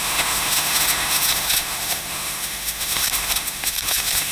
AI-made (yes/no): yes